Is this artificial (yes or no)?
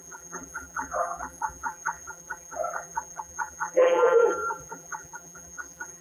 yes